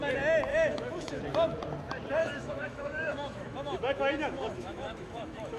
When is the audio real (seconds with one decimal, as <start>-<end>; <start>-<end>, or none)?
0.0-0.5; 1.2-2.2